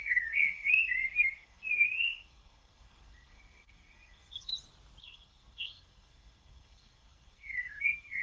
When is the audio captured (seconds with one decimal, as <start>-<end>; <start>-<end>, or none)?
4.5-5.0